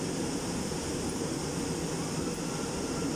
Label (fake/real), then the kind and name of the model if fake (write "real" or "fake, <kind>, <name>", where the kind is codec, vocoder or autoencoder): real